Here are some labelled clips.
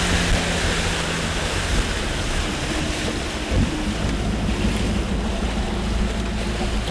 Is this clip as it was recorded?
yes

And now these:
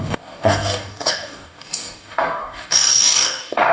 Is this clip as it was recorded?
no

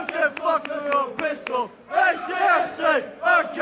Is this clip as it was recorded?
yes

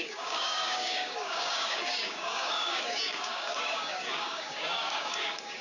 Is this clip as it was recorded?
no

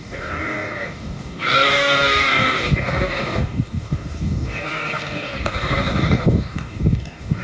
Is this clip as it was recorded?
no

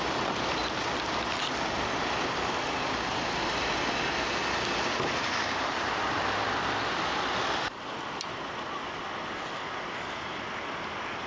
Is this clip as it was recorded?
yes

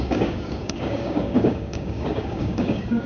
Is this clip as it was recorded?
no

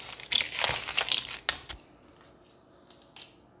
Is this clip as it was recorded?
yes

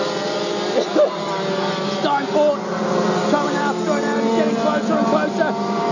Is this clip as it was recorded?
yes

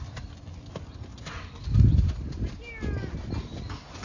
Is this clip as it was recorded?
yes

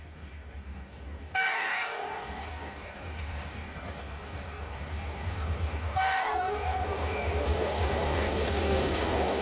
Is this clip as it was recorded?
no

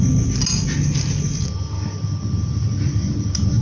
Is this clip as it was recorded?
yes